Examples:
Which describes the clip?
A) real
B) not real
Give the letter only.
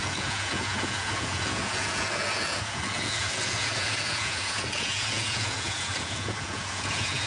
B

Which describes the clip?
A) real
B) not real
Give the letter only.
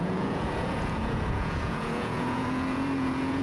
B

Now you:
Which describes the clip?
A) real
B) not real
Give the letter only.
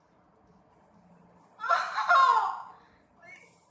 A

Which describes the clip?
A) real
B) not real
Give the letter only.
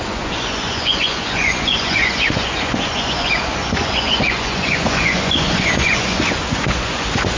B